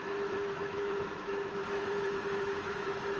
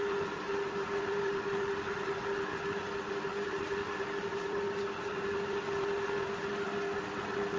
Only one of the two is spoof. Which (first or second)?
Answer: first